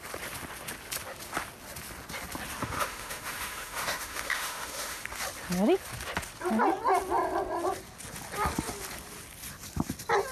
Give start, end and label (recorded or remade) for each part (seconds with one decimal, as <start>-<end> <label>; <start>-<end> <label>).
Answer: 0.0-2.6 recorded; 2.6-5.0 remade; 5.0-10.3 recorded